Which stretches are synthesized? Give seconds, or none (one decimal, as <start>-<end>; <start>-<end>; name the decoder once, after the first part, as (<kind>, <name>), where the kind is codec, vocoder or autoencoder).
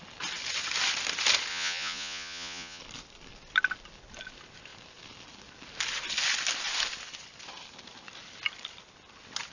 1.5-2.8 (vocoder, Vocos)